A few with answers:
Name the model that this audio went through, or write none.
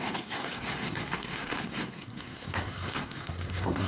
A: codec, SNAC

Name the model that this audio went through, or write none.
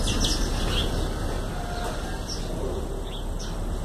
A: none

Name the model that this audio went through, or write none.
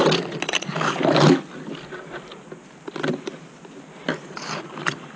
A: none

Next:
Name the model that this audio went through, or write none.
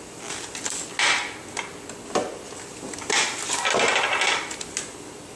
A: none